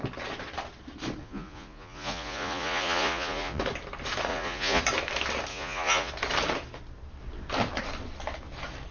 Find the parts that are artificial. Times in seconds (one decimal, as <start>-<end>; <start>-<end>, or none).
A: 1.2-3.6; 4.3-4.8; 5.5-6.1